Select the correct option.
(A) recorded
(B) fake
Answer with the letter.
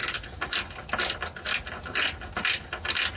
A